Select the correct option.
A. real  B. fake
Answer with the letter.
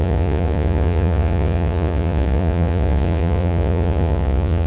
B